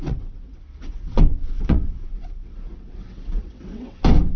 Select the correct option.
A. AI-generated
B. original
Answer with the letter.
A